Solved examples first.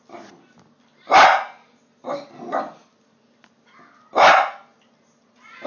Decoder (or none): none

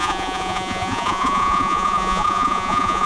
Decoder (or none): vocoder, Vocos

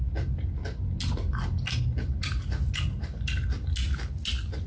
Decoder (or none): none